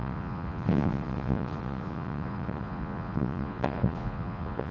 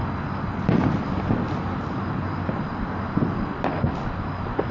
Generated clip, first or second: first